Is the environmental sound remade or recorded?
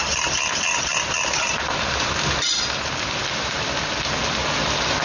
remade